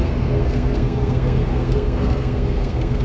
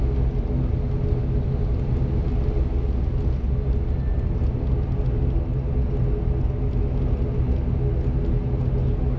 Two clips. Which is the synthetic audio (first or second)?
first